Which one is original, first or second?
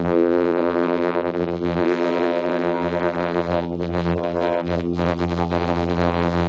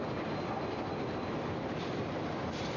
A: second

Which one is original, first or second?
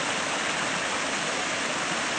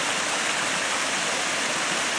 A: first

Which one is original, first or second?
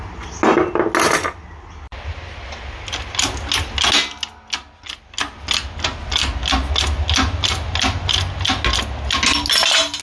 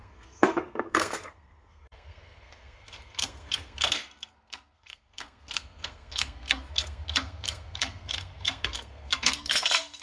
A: first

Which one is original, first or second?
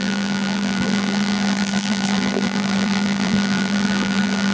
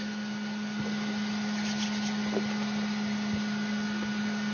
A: second